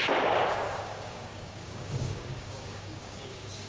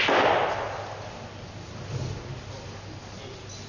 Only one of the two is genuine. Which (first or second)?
second